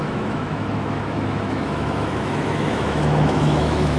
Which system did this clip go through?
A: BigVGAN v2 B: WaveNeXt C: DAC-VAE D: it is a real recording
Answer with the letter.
C